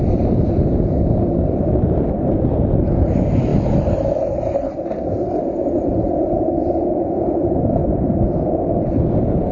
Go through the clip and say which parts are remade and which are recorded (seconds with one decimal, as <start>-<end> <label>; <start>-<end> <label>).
0.0-3.5 recorded; 3.5-6.9 remade; 6.9-7.8 recorded; 7.8-8.4 remade; 8.4-9.5 recorded